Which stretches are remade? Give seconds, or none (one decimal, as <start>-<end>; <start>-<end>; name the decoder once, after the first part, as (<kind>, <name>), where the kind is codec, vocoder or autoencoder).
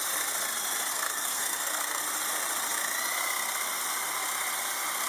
0.9-2.0 (codec, SNAC)